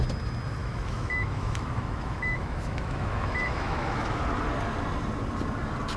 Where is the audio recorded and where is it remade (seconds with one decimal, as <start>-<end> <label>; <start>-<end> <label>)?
0.0-0.6 recorded; 0.6-4.2 remade; 4.2-6.0 recorded

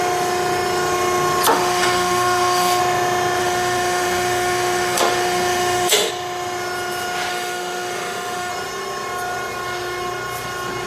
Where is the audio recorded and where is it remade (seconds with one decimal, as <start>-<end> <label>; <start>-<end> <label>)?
0.0-1.5 recorded; 1.5-2.8 remade; 2.8-3.4 recorded; 3.4-6.1 remade; 6.1-7.3 recorded; 7.3-8.5 remade; 8.5-10.9 recorded

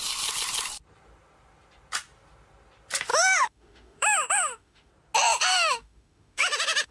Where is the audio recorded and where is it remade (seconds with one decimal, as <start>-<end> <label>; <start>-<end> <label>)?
0.0-3.1 recorded; 3.1-4.9 remade; 4.9-5.5 recorded; 5.5-6.9 remade

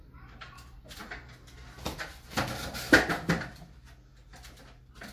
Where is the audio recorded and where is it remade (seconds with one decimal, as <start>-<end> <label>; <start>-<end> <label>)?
0.0-5.1 recorded

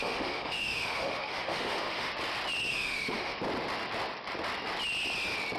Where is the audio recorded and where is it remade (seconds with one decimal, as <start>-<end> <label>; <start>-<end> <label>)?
0.0-2.1 remade; 2.1-2.7 recorded; 2.7-3.4 remade; 3.4-5.6 recorded

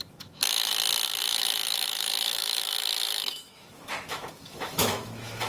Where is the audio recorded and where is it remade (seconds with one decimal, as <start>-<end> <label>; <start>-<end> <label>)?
0.0-0.7 remade; 0.7-1.2 recorded; 1.2-5.5 remade

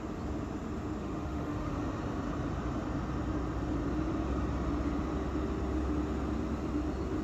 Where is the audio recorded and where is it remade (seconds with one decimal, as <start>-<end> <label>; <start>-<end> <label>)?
0.0-1.0 recorded; 1.0-1.7 remade; 1.7-7.2 recorded

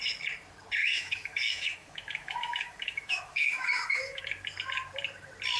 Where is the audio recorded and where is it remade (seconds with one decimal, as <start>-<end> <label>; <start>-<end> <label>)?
0.0-0.8 recorded; 0.8-4.2 remade; 4.2-5.6 recorded